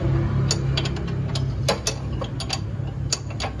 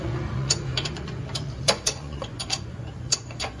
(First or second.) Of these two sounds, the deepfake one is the second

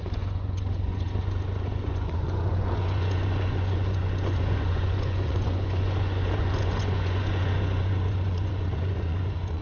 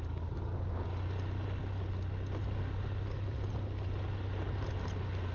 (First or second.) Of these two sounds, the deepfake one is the first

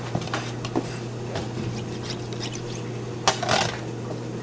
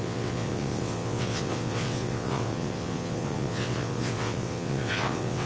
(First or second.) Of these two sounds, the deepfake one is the second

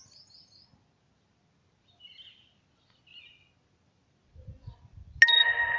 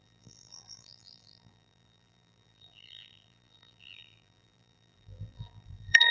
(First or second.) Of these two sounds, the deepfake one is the second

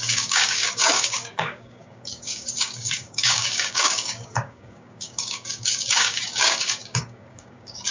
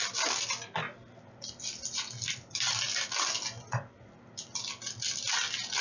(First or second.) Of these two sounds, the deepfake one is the first